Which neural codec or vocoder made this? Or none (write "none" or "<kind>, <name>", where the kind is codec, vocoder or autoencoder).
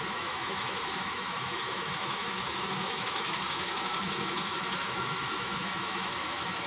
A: autoencoder, DAC-VAE